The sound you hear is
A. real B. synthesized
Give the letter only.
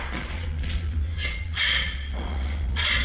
B